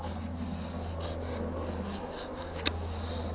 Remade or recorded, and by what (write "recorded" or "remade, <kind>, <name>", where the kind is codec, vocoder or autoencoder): recorded